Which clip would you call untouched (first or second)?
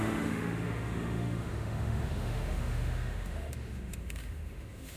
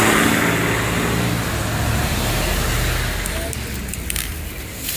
second